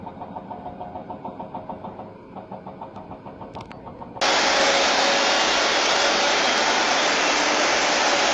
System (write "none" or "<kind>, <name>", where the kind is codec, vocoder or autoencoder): none